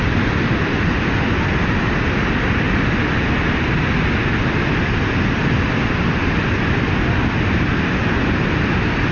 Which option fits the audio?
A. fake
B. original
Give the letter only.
B